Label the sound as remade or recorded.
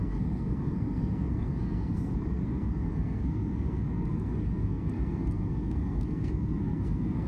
remade